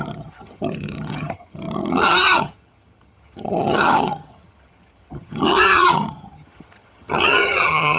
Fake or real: fake